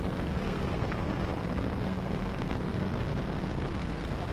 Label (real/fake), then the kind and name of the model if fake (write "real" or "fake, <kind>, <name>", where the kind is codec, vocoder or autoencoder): fake, codec, SNAC